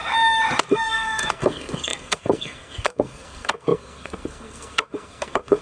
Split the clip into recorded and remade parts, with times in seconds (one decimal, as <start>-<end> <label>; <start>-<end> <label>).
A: 0.0-0.7 recorded; 0.7-5.6 remade